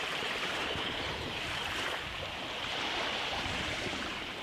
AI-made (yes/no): yes